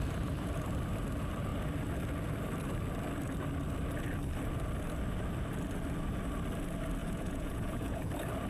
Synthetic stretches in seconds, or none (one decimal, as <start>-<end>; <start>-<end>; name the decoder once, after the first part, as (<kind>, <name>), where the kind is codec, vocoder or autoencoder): 7.0-8.1 (vocoder, Vocos)